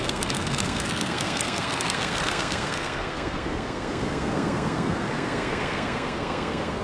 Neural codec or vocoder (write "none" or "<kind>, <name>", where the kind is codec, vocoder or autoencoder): codec, SNAC